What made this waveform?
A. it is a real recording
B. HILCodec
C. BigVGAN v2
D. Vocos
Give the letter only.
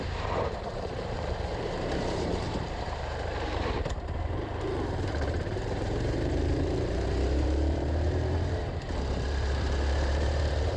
C